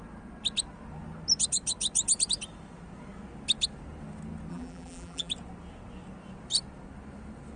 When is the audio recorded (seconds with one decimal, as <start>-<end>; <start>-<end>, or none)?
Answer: 0.0-4.5; 5.3-7.6